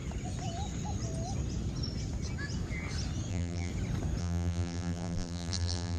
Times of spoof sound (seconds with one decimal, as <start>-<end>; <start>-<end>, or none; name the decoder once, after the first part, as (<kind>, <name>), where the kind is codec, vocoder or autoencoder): 3.3-3.7 (vocoder, BigVGAN v2); 4.2-6.0